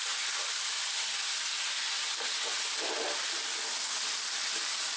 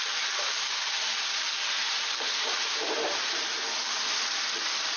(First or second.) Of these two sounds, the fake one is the second